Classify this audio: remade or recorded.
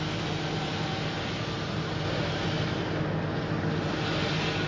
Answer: recorded